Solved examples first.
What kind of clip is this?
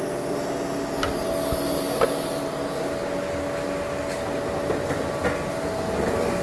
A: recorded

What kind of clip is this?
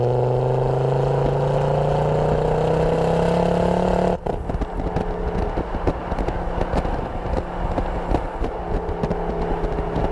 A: recorded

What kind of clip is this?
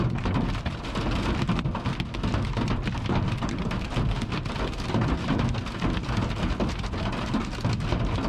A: recorded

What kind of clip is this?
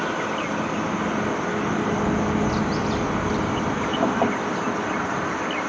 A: recorded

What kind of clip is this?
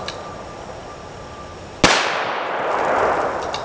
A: recorded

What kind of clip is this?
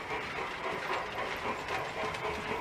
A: recorded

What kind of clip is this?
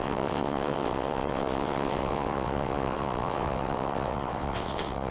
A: remade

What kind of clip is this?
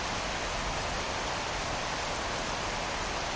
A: recorded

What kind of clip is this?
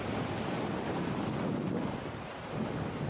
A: recorded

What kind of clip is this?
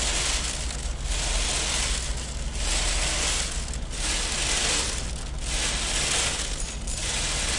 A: recorded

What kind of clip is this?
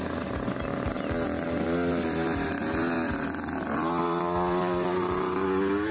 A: recorded